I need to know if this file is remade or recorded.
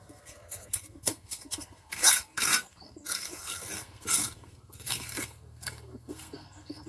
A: remade